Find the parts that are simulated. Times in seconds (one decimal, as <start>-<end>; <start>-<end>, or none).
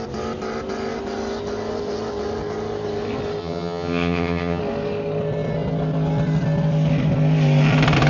3.4-4.6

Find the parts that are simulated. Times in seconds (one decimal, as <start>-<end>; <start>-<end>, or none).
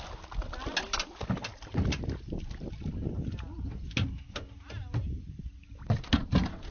none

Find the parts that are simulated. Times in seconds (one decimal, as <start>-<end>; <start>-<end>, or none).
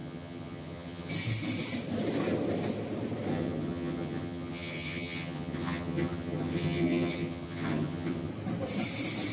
0.0-1.1; 3.3-8.3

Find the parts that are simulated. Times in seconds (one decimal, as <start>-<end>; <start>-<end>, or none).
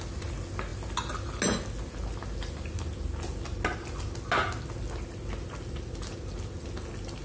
none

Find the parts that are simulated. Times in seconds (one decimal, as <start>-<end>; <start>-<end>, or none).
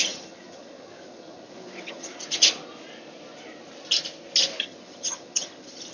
0.0-2.1; 4.6-5.9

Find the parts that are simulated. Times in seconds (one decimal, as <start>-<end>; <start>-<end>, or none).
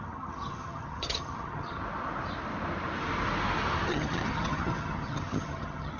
0.0-1.8; 3.9-6.0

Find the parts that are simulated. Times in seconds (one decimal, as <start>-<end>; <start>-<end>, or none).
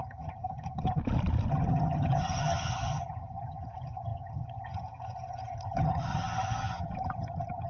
0.0-1.0; 1.5-7.7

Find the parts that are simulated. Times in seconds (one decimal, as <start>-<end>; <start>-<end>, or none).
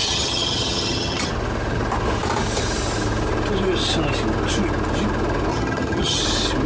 0.0-1.3; 5.5-6.2